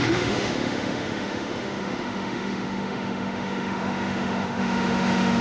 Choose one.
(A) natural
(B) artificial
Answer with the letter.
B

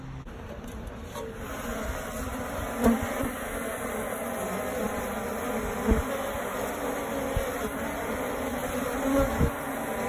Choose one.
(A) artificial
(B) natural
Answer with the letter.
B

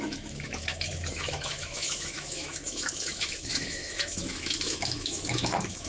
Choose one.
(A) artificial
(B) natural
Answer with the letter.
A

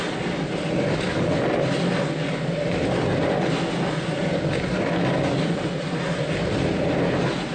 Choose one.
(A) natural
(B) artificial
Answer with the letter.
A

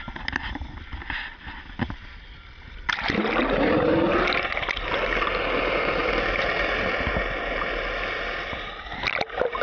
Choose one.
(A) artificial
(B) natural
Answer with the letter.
B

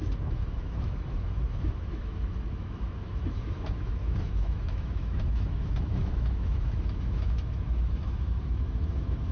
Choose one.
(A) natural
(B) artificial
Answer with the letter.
B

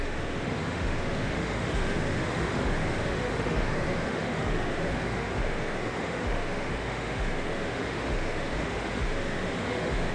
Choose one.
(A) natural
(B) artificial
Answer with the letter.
B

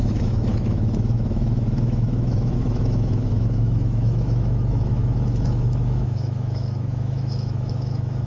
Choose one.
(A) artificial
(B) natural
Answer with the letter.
A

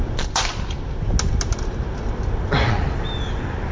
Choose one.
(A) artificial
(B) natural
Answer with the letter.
B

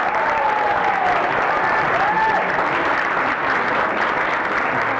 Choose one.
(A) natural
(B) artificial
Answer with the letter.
A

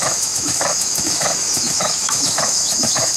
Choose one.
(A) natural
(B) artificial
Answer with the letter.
B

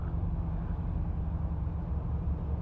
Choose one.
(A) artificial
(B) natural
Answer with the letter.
B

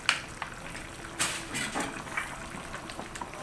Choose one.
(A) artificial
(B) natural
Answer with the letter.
B